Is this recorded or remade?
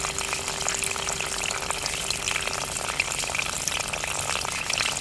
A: recorded